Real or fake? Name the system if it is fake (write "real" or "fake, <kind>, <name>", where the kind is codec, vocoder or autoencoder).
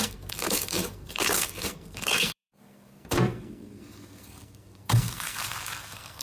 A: fake, codec, SNAC